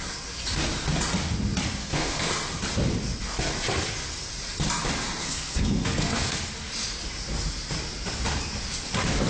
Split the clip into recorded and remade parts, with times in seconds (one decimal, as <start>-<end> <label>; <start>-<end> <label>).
0.0-1.8 recorded; 1.8-2.3 remade; 2.3-5.2 recorded; 5.2-6.3 remade; 6.3-9.3 recorded